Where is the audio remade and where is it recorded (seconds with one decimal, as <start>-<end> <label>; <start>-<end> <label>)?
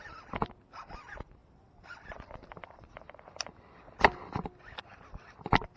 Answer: 0.0-5.8 recorded